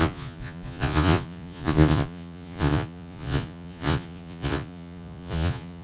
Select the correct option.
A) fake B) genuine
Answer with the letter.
A